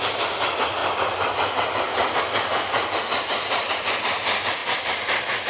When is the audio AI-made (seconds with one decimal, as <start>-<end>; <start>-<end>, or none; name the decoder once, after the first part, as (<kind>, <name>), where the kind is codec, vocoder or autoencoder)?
0.8-3.7 (vocoder, BigVGAN v2); 4.6-5.5